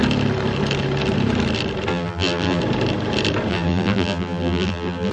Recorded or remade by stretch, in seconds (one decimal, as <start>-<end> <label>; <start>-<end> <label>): 0.0-1.9 recorded; 1.9-2.6 remade; 2.6-3.5 recorded; 3.5-5.1 remade